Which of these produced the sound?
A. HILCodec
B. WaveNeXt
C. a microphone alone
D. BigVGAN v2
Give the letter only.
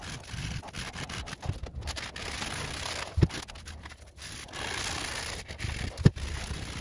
C